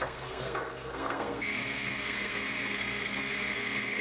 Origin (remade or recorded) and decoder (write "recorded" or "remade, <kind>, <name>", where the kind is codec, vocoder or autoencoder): remade, codec, SNAC